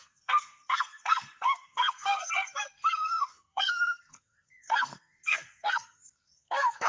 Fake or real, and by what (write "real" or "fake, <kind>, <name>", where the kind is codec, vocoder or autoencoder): fake, codec, SNAC